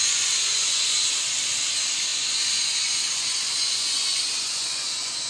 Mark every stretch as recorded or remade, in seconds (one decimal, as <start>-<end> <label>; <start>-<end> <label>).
0.0-1.1 remade; 1.1-2.1 recorded; 2.1-5.3 remade